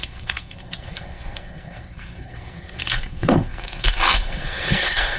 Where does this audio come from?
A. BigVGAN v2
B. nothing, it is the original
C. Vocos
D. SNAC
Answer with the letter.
D